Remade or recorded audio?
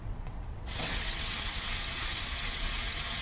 remade